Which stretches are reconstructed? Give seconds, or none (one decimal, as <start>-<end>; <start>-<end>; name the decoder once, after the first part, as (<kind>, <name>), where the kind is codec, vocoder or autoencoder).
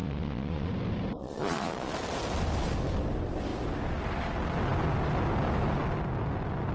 0.0-0.7 (vocoder, Vocos); 1.2-1.9